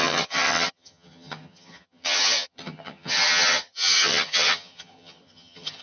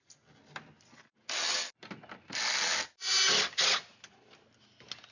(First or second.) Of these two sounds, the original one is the second